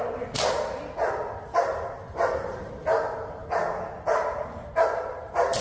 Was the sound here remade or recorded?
recorded